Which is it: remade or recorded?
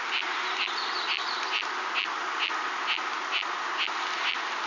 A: recorded